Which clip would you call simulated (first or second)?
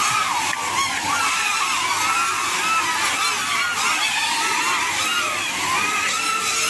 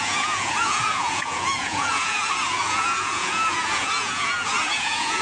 second